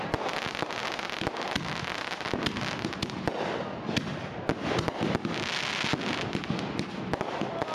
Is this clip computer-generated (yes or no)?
no